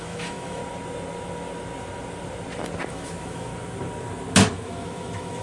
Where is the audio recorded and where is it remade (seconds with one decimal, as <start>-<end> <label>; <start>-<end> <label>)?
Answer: 0.0-0.6 remade; 0.6-2.9 recorded; 2.9-3.5 remade; 3.5-4.5 recorded; 4.5-5.4 remade